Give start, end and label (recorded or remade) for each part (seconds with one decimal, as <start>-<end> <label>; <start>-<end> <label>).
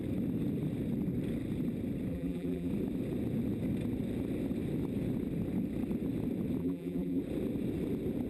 0.0-2.1 recorded; 2.1-2.7 remade; 2.7-6.6 recorded; 6.6-7.2 remade; 7.2-8.3 recorded